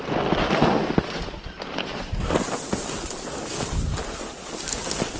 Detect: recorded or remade recorded